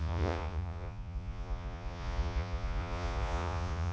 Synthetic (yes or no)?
yes